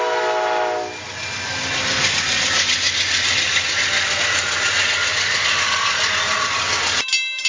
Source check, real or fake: real